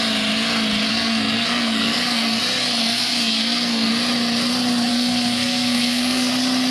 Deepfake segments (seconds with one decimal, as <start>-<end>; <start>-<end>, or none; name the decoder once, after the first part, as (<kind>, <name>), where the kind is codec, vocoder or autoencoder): 0.9-2.4 (codec, SNAC); 2.8-3.9; 4.9-6.3